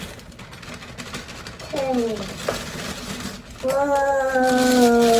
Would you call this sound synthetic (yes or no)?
no